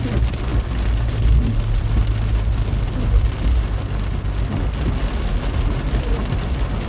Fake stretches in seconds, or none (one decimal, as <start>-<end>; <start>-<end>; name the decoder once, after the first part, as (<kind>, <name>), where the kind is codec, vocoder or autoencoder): none